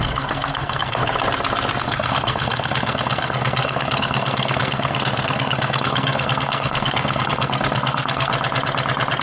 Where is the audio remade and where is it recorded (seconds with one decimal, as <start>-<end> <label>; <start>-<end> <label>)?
0.0-1.0 remade; 1.0-1.8 recorded; 1.8-8.3 remade; 8.3-9.2 recorded